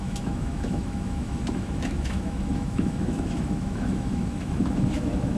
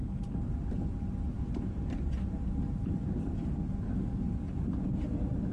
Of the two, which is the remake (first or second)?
first